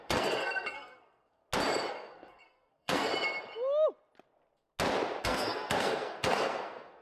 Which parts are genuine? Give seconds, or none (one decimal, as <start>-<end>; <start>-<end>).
1.4-1.9; 3.1-5.2

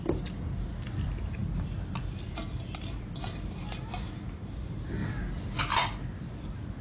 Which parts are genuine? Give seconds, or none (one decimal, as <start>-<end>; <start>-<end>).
0.0-6.8

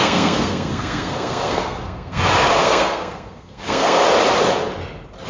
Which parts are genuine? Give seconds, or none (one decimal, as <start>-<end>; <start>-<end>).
2.2-2.6; 4.0-5.3

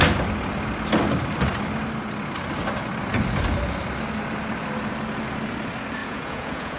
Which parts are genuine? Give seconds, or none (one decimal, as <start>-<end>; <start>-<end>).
0.0-6.0